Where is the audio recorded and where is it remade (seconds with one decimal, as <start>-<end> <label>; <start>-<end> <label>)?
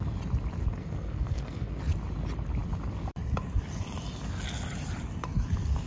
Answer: 0.0-0.7 recorded; 0.7-1.8 remade; 1.8-5.9 recorded